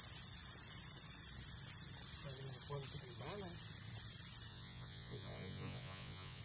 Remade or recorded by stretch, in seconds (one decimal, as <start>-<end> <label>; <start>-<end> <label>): 0.0-4.5 recorded; 4.5-6.4 remade